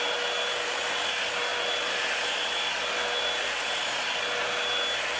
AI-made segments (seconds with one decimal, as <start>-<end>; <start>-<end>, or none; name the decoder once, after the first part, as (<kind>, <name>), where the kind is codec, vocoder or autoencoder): none